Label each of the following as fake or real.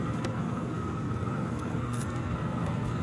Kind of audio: fake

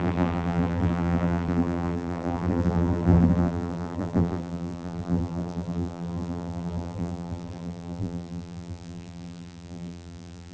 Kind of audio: fake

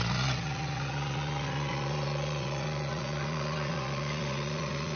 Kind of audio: fake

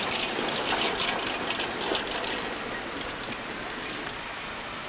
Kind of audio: real